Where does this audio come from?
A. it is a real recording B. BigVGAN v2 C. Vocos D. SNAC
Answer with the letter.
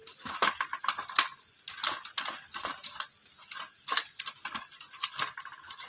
A